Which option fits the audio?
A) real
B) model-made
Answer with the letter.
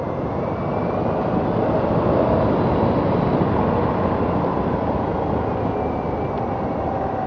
A